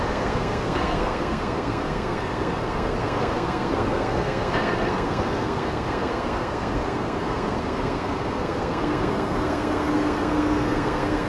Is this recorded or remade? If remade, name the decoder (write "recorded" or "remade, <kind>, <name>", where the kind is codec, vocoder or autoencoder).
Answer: remade, codec, SNAC